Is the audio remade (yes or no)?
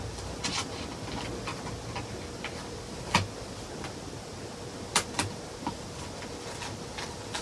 no